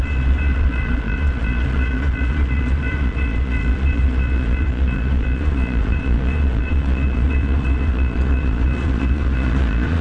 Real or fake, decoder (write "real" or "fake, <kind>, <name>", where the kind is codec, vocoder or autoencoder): fake, vocoder, Vocos